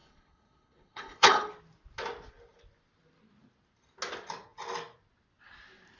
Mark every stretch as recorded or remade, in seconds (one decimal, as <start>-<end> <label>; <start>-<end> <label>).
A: 0.0-1.5 remade; 1.5-6.0 recorded